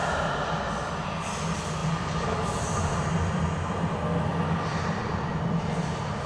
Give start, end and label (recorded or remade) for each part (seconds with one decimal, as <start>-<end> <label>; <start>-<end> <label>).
0.0-1.8 recorded; 1.8-3.7 remade; 3.7-4.7 recorded; 4.7-6.3 remade